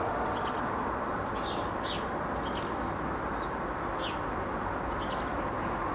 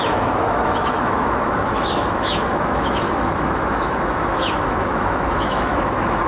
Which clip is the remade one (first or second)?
second